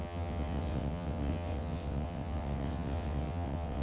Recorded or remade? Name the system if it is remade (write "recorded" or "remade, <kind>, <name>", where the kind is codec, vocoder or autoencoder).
remade, vocoder, WaveNeXt